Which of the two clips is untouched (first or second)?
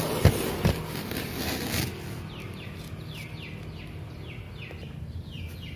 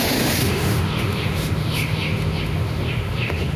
first